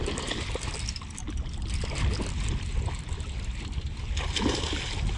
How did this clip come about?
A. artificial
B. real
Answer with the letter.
B